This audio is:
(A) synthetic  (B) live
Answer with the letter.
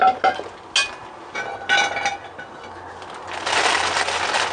B